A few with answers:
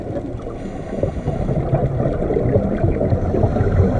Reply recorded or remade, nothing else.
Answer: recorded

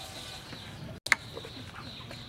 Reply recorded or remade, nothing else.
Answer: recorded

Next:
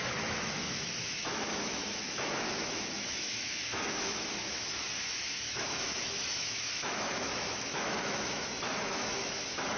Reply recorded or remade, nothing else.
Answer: remade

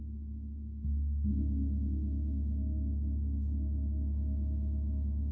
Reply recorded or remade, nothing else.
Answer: remade